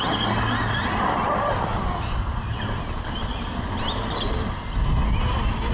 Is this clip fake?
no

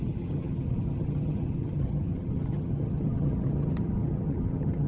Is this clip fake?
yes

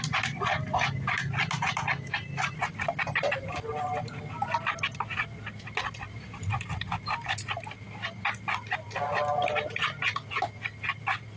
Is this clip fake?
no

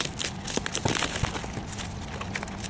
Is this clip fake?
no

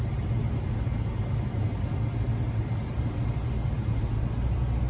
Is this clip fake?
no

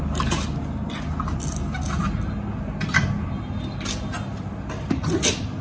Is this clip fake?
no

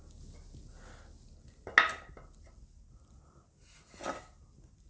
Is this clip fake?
no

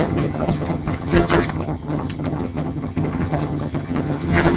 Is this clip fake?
yes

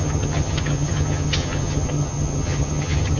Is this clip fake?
yes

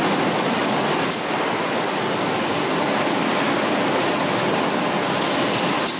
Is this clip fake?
no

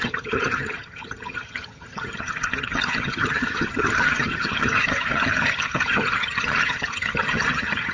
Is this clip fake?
yes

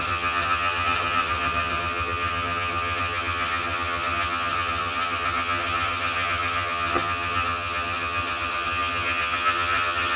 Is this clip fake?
yes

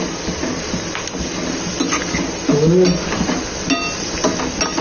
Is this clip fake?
no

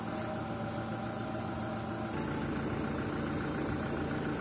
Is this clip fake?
no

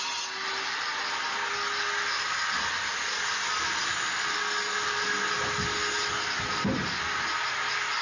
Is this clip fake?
no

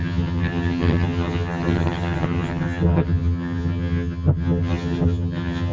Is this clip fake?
yes